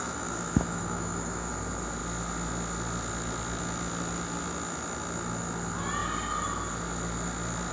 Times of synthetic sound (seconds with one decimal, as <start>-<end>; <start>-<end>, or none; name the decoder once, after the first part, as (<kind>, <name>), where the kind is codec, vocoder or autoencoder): 0.0-1.5 (autoencoder, DAC-VAE)